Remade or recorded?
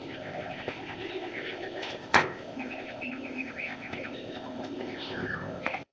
remade